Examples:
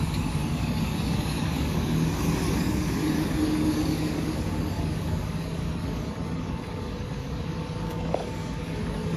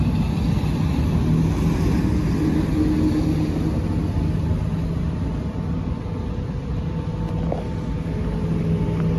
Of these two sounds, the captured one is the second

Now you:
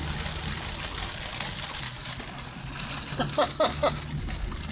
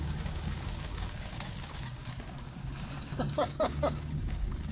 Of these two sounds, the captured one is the first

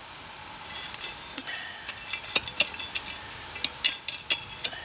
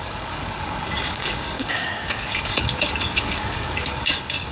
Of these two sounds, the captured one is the first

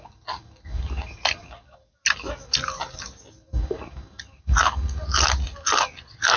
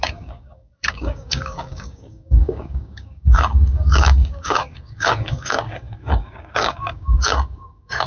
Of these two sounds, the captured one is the first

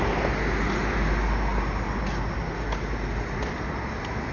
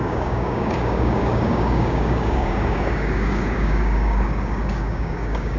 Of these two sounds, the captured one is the first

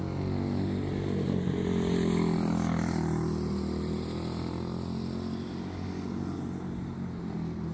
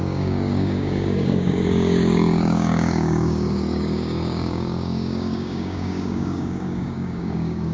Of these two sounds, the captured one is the first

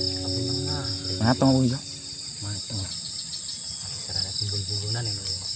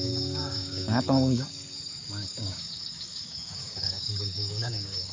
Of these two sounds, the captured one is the first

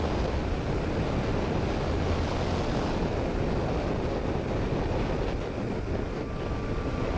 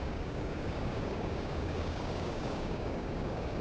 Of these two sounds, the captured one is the first